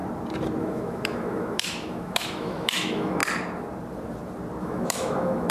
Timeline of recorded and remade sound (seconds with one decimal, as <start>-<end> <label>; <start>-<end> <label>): 0.0-0.6 recorded; 0.6-3.2 remade; 3.2-4.6 recorded; 4.6-5.5 remade